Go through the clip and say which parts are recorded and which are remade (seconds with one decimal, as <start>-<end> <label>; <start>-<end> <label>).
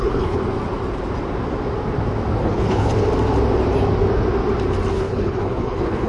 0.0-0.4 remade; 0.4-2.4 recorded; 2.4-2.9 remade; 2.9-4.9 recorded; 4.9-6.1 remade